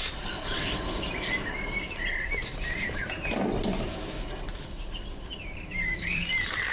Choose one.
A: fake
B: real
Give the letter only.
A